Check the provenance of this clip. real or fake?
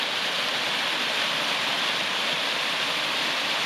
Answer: fake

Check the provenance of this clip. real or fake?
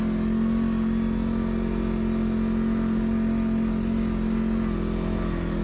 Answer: real